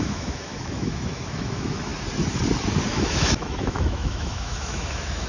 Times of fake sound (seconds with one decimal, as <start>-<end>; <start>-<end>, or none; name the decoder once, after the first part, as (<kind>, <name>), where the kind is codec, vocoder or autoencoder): 0.0-1.9 (autoencoder, DAC-VAE); 2.9-5.3